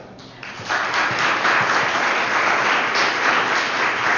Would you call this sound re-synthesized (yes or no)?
no